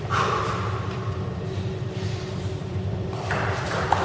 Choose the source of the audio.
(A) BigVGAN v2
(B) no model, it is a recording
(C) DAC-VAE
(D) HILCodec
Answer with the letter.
A